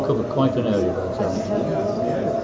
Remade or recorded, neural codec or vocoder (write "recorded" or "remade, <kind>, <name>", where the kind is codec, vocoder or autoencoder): recorded